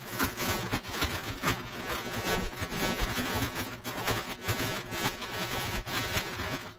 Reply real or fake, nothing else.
fake